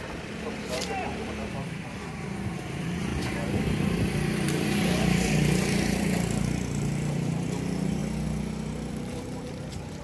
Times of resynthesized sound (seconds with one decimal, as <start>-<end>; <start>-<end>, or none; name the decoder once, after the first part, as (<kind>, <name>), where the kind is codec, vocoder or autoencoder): 0.0-3.1 (vocoder, BigVGAN v2); 4.3-8.0; 8.9-10.0